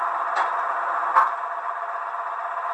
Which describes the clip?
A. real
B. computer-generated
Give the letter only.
A